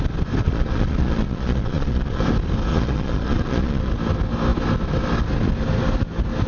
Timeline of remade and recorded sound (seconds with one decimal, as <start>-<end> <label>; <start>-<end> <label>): 0.0-0.4 recorded; 0.4-2.2 remade; 2.2-2.7 recorded; 2.7-3.9 remade; 3.9-6.5 recorded